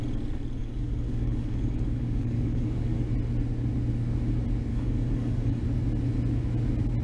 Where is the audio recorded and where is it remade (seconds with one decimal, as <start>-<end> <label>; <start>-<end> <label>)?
0.0-0.6 recorded; 0.6-3.0 remade; 3.0-4.7 recorded; 4.7-5.6 remade; 5.6-7.0 recorded